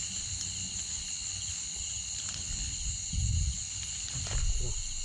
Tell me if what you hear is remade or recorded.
recorded